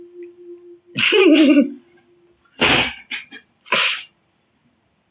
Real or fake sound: real